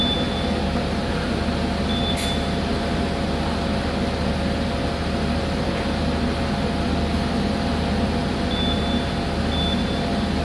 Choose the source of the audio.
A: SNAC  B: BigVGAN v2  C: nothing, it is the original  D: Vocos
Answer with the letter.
C